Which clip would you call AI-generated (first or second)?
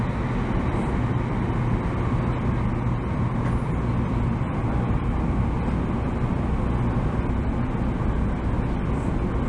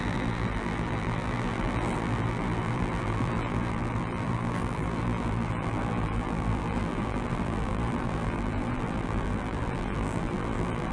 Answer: second